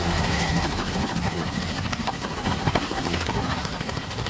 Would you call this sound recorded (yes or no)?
no